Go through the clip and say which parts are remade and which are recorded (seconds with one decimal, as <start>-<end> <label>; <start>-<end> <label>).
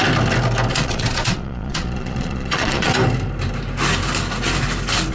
0.0-0.7 recorded; 0.7-2.9 remade; 2.9-5.1 recorded